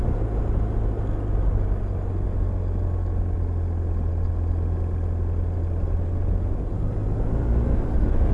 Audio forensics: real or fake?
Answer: real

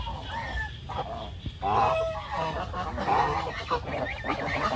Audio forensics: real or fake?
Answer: real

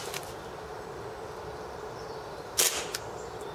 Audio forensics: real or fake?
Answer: real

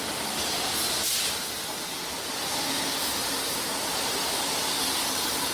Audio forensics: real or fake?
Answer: real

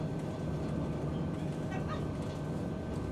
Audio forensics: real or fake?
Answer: real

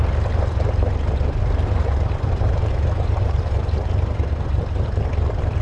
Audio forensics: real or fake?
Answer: fake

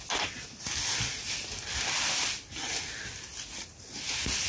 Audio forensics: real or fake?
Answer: real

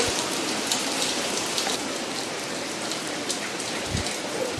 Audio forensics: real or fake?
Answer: fake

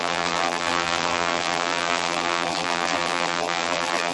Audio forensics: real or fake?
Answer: fake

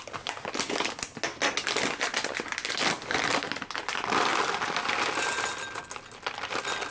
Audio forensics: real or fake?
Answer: real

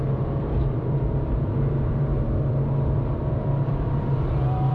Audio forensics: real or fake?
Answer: fake